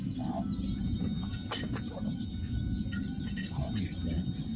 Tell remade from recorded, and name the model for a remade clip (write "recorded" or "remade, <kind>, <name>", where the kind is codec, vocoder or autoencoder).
recorded